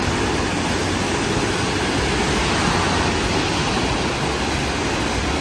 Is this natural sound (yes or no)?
yes